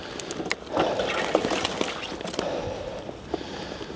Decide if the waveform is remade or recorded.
recorded